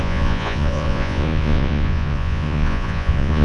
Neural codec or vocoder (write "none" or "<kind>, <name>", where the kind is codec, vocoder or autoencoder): vocoder, Vocos